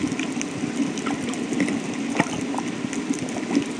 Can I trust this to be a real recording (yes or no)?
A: yes